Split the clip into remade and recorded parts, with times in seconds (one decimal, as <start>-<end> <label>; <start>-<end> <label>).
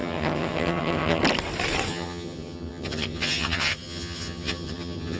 0.0-1.2 remade; 1.2-1.9 recorded; 1.9-5.2 remade